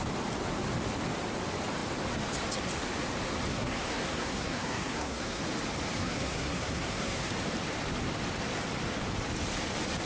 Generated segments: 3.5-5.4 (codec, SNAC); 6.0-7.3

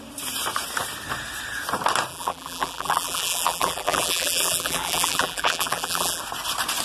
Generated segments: 2.1-6.2 (vocoder, BigVGAN v2)

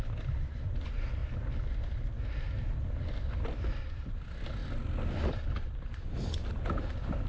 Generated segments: 4.6-6.5 (vocoder, BigVGAN v2)

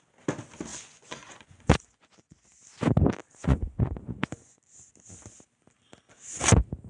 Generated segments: 0.7-2.5 (vocoder, Vocos); 3.3-4.6

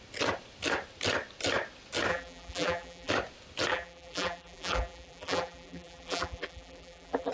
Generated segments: 2.1-3.1 (vocoder, BigVGAN v2); 3.7-7.3

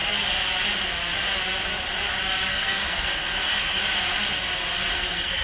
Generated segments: 2.5-3.8 (codec, SNAC); 4.9-5.4